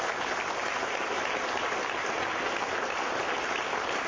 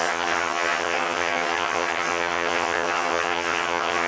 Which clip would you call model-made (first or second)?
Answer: second